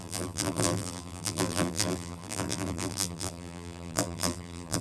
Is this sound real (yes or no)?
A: no